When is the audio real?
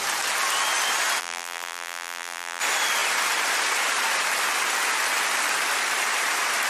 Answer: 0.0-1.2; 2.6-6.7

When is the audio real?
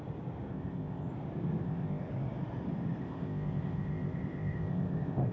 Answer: 0.0-0.5; 1.1-1.6; 2.1-3.0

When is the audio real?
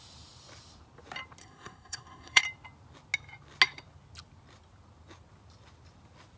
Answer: 0.0-1.4; 2.4-6.4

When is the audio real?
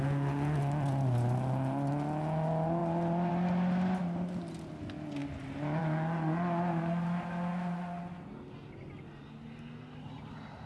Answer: 0.0-10.7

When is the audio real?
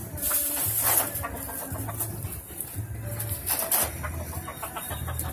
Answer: 0.0-1.9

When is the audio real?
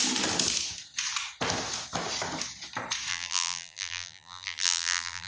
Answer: 0.0-3.1